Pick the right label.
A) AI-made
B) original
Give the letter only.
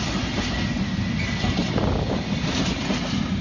B